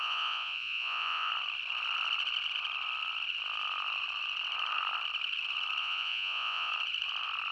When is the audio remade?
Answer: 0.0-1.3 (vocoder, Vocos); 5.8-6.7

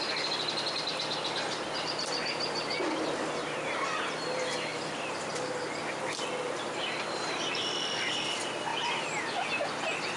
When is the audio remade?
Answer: none

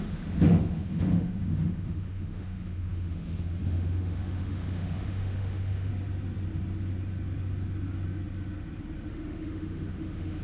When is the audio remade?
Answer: 0.0-5.9 (autoencoder, DAC-VAE); 9.1-10.4

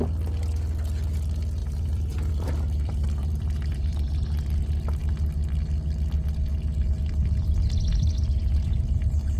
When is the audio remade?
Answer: 1.6-4.1 (vocoder, BigVGAN v2)

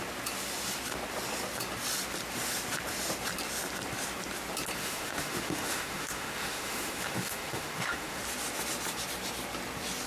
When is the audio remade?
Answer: 4.8-8.2 (autoencoder, DAC-VAE)

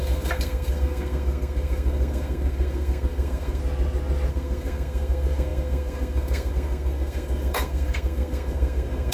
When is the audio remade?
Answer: 0.0-3.6 (codec, SNAC); 4.3-9.1